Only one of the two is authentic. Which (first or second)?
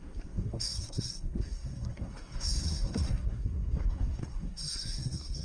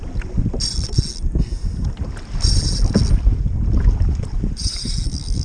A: second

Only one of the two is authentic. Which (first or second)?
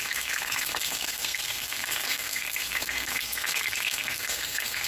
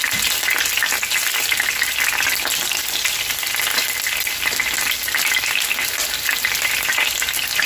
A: second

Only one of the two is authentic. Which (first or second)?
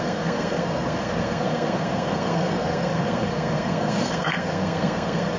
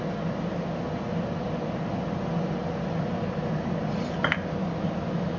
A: second